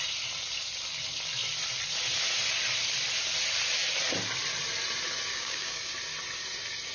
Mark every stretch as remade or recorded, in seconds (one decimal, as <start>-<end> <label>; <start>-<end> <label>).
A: 0.0-5.3 recorded; 5.3-5.9 remade; 5.9-6.9 recorded